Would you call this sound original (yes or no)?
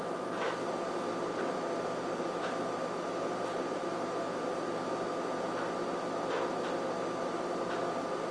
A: yes